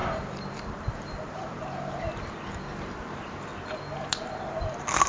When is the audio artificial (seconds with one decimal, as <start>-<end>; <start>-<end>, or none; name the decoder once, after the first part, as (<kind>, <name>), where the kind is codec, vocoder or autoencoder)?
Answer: 0.0-3.5 (vocoder, BigVGAN v2); 4.2-5.1